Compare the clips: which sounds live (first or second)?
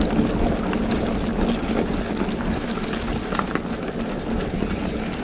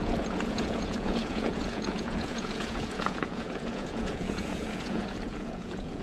first